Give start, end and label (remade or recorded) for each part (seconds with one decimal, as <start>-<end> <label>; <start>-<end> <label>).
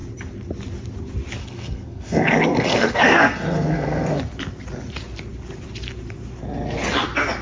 0.0-1.4 recorded; 1.4-4.2 remade; 4.2-7.4 recorded